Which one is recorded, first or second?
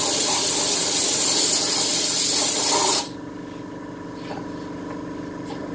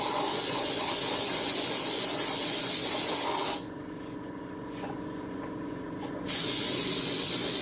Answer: first